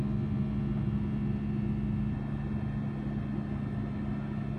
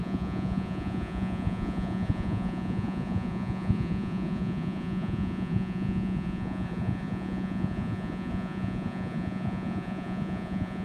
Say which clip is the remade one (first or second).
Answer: second